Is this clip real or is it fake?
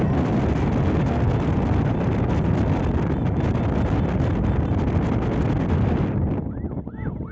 real